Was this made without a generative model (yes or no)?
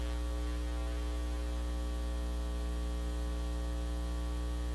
yes